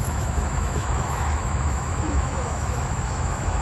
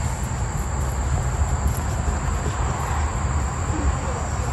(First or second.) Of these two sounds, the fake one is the first